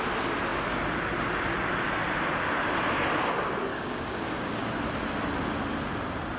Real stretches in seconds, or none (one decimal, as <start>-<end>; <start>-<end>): 0.0-3.7; 4.7-6.4